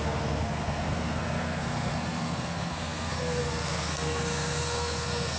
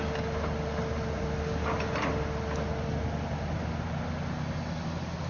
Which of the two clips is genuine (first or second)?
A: second